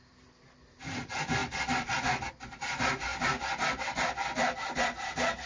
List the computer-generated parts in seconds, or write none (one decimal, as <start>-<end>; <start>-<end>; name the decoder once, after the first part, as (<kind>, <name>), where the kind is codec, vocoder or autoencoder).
none